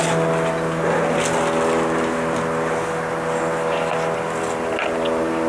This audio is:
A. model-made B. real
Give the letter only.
B